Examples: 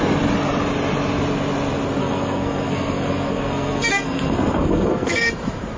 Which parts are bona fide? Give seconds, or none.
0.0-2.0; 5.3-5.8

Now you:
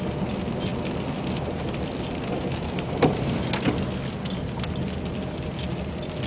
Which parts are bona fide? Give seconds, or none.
0.0-6.3

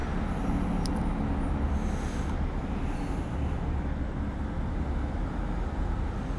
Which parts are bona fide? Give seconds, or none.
0.0-6.4